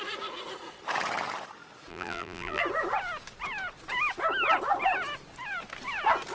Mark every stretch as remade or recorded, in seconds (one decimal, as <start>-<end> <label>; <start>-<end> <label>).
0.0-1.9 recorded; 1.9-2.6 remade; 2.6-6.3 recorded